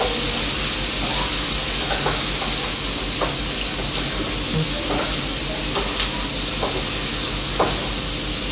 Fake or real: real